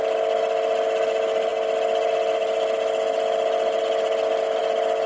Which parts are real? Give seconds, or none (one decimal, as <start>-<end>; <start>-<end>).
0.0-5.1